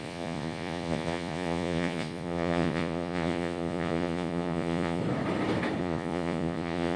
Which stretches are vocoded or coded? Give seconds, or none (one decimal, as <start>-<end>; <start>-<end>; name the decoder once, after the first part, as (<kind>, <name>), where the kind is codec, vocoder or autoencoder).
0.0-5.0 (vocoder, Vocos); 5.8-7.0